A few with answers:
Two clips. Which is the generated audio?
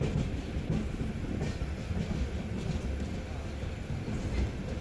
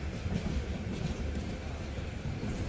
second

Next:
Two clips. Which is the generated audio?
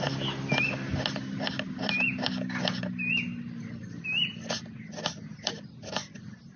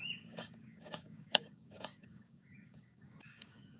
second